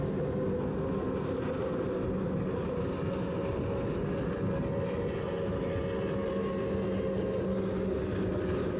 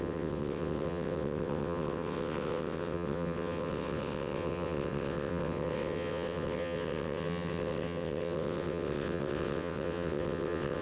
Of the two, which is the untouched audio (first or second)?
first